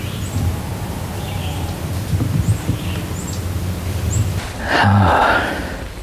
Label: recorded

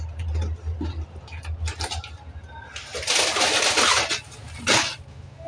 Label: recorded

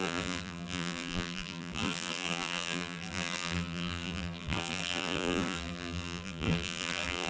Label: remade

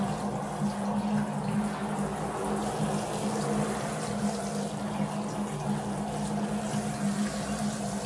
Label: recorded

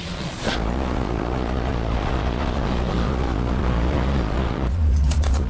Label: remade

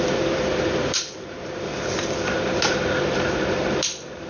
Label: remade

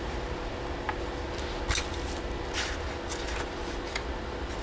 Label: recorded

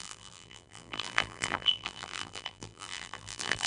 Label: remade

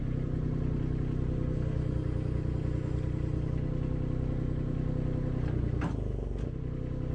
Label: recorded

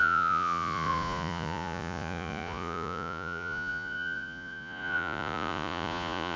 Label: remade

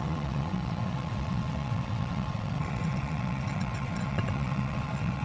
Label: remade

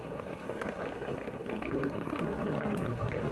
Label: remade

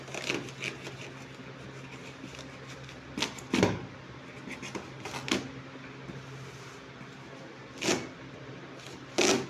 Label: recorded